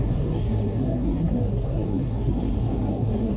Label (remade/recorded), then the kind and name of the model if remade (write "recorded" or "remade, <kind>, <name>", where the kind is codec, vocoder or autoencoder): remade, codec, SNAC